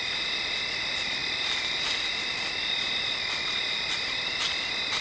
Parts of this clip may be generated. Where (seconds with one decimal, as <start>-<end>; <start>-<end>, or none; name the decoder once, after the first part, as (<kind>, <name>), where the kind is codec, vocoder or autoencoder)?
none